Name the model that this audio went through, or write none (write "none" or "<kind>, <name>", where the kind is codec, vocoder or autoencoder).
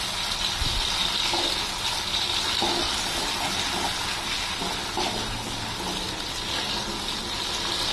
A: none